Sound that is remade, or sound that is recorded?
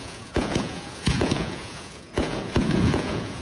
remade